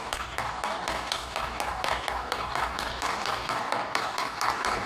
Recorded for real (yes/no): no